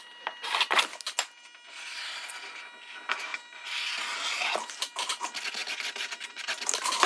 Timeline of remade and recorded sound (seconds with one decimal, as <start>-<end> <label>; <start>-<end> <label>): 0.0-7.1 recorded